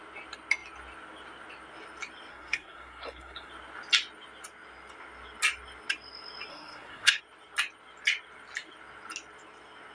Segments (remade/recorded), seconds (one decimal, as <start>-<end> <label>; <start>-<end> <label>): 0.0-2.3 recorded; 2.3-3.5 remade; 3.5-6.5 recorded; 6.5-7.2 remade; 7.2-9.9 recorded